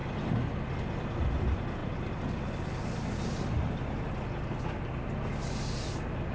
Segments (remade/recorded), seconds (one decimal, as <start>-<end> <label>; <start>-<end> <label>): 0.0-6.3 recorded